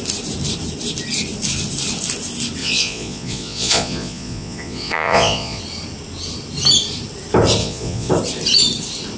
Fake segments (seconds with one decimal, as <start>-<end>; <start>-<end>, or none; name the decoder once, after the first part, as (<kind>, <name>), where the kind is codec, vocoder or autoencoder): 2.6-5.6 (vocoder, Vocos); 7.6-8.1